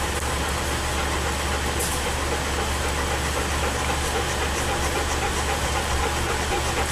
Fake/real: real